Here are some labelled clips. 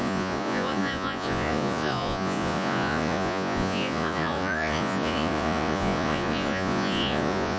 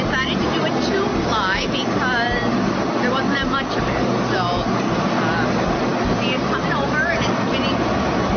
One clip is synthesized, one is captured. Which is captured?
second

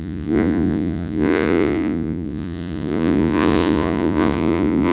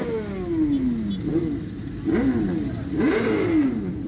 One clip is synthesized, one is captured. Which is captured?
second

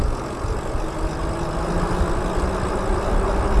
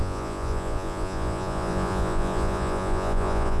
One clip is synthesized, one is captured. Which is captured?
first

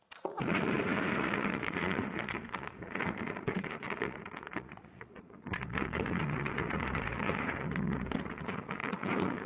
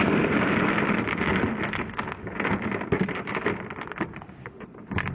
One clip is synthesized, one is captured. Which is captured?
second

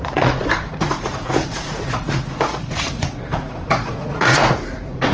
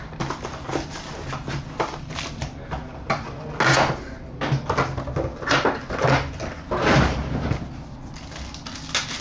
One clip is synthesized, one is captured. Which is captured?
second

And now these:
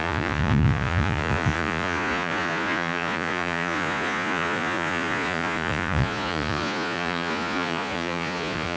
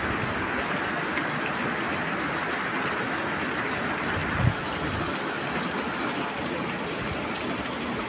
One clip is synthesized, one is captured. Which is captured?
second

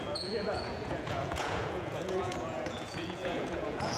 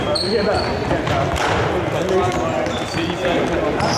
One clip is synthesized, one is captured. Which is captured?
second